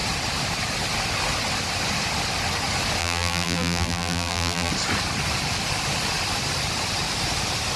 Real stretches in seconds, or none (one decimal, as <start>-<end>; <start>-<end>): 0.0-3.0; 4.7-7.8